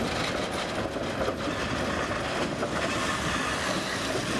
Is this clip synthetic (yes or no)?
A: no